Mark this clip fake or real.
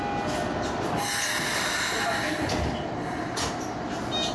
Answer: real